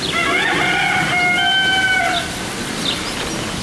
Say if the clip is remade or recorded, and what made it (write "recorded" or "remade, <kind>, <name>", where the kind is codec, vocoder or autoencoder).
recorded